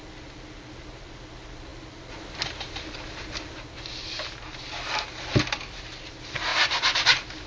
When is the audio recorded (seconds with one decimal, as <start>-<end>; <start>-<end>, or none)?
0.0-7.5